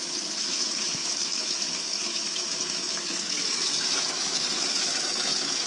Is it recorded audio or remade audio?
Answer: remade